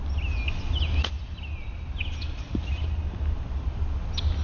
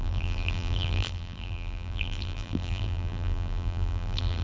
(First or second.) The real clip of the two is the first